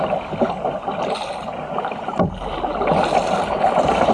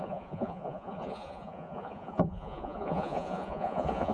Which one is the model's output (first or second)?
second